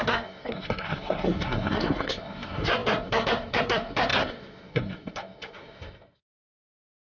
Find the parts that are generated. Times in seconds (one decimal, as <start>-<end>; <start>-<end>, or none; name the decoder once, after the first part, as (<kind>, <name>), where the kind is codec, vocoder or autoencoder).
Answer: 0.0-7.2 (codec, SNAC)